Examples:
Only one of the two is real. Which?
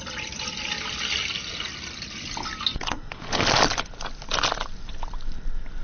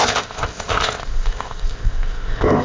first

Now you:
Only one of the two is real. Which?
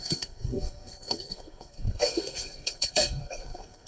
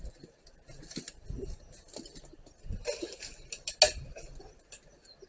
second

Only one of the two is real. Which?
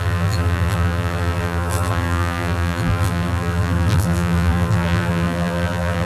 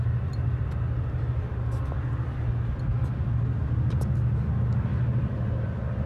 second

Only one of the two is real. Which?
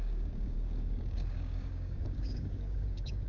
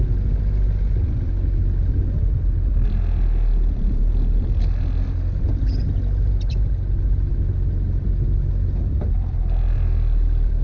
second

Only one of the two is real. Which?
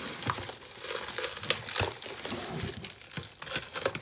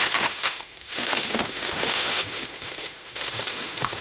first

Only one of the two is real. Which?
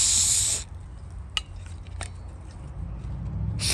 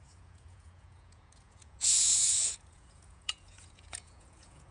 first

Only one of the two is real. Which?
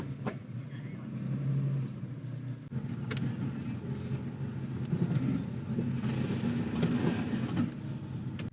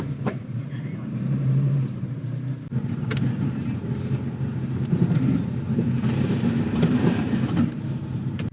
first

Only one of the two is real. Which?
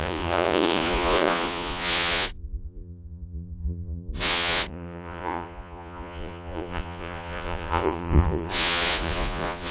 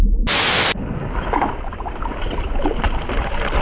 second